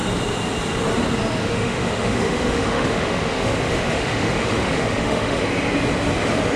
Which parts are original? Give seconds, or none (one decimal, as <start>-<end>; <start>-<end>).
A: 0.0-1.4; 5.4-6.6

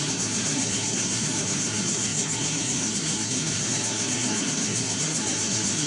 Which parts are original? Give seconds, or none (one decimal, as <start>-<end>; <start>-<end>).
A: none

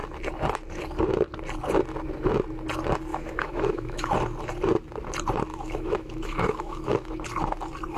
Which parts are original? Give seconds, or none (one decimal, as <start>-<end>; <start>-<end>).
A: 0.0-3.1; 4.1-5.5; 7.1-8.0

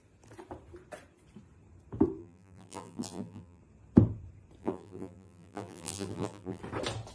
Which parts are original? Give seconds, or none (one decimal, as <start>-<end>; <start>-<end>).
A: 0.0-2.2; 3.6-4.6; 6.6-7.1

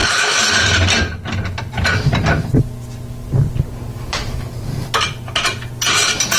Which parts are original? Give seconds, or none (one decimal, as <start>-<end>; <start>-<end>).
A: 0.0-3.9; 4.5-6.4